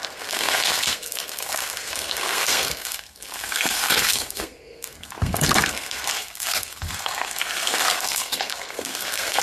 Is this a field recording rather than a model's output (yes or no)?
no